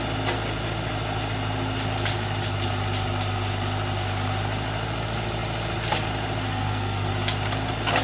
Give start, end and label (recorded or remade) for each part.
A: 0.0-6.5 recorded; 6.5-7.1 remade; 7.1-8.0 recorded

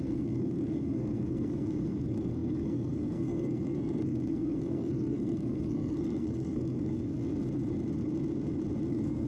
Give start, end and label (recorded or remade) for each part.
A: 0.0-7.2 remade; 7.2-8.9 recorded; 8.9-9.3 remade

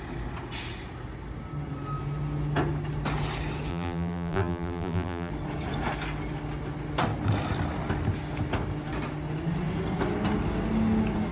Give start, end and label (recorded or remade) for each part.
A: 0.0-3.7 recorded; 3.7-5.3 remade; 5.3-11.3 recorded